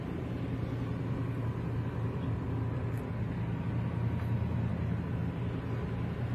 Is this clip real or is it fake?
real